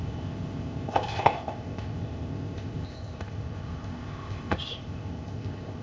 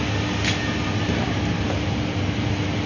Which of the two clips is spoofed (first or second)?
first